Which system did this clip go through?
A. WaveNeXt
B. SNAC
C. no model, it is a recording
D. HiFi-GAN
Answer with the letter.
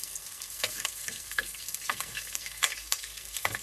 B